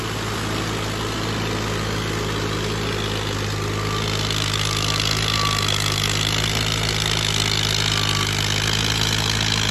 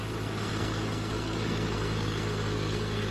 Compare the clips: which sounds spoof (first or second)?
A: second